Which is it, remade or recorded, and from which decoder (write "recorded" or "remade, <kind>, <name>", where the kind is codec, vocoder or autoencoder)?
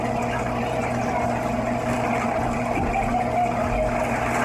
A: recorded